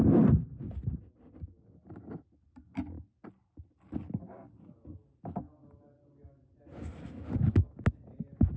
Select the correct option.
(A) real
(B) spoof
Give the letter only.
A